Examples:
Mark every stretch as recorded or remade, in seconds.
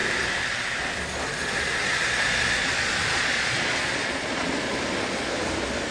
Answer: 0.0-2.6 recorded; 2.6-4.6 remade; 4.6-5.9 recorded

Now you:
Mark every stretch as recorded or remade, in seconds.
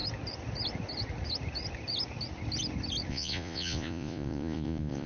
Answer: 0.0-3.1 recorded; 3.1-5.1 remade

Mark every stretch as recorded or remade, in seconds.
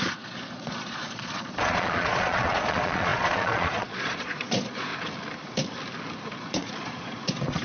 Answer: 0.0-4.9 remade; 4.9-6.3 recorded; 6.3-7.6 remade